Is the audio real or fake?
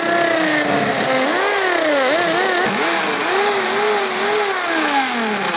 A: real